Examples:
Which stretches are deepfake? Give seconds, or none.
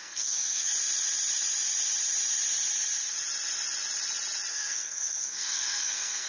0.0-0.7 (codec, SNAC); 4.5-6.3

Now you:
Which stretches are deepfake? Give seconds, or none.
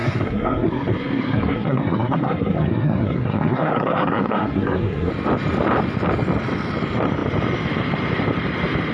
0.0-5.1 (codec, SNAC)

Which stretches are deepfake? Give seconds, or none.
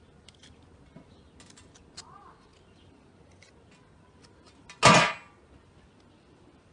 none